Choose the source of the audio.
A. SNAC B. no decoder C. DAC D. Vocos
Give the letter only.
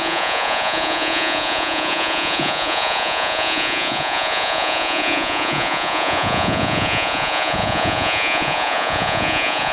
D